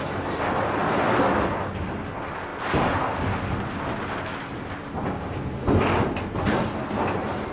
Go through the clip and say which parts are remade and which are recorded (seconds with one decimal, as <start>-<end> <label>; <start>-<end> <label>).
0.0-7.5 recorded

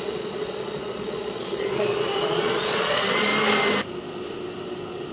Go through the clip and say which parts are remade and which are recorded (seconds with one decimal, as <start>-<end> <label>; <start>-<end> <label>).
0.0-3.3 remade; 3.3-5.1 recorded

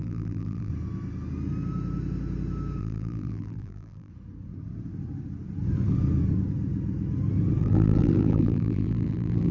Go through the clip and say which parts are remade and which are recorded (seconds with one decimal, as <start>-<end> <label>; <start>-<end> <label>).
0.0-0.7 remade; 0.7-2.8 recorded; 2.8-4.1 remade; 4.1-7.6 recorded; 7.6-9.5 remade

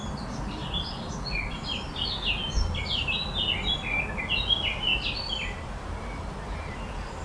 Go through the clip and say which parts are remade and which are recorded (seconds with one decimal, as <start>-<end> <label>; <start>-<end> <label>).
0.0-7.2 recorded

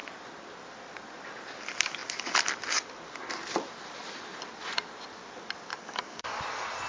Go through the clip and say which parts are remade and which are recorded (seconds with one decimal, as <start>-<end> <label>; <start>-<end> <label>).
0.0-5.7 recorded; 5.7-6.4 remade; 6.4-6.9 recorded